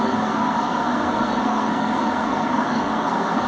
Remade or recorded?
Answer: remade